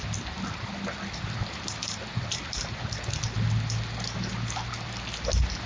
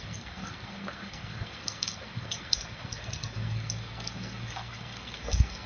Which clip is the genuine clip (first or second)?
first